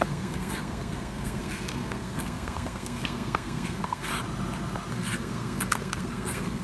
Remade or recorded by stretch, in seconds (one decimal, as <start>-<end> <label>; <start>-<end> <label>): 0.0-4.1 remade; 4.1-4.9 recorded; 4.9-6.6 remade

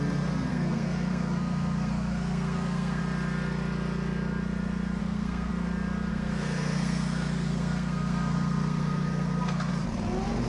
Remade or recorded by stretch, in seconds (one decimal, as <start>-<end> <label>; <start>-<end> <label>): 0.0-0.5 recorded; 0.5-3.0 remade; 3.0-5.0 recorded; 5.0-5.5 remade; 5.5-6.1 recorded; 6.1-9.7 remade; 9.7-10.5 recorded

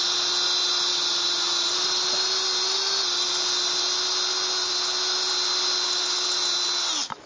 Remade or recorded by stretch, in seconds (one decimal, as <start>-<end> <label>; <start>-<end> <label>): 0.0-7.3 recorded

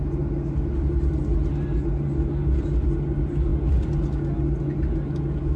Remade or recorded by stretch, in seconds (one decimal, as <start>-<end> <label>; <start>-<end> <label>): 0.0-5.6 recorded